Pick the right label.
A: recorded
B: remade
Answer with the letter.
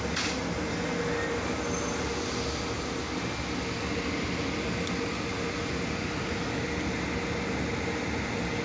A